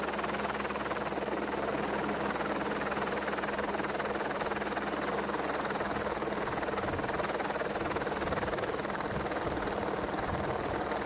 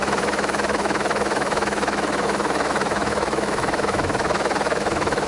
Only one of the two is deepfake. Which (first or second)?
second